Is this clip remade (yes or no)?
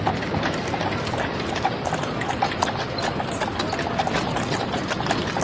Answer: no